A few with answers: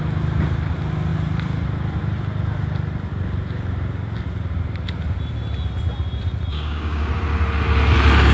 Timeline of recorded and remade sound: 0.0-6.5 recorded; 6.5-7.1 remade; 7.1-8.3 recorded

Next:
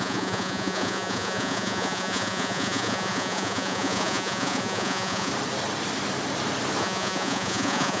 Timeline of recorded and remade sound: 0.0-5.3 remade; 5.3-6.8 recorded; 6.8-8.0 remade

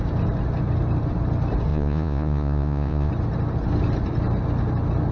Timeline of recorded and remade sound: 0.0-1.7 recorded; 1.7-3.1 remade; 3.1-5.1 recorded

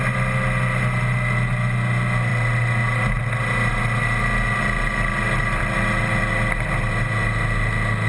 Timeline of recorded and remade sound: 0.0-8.1 recorded

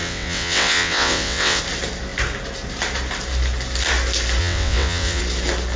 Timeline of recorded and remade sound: 0.0-1.6 remade; 1.6-4.4 recorded; 4.4-5.2 remade; 5.2-5.8 recorded

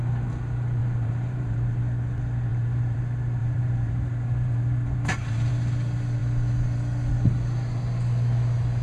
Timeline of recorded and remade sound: 0.0-0.8 recorded; 0.8-1.8 remade; 1.8-2.5 recorded; 2.5-3.0 remade; 3.0-3.4 recorded; 3.4-5.5 remade; 5.5-8.8 recorded